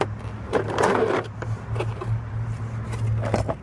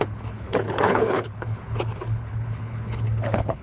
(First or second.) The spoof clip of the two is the second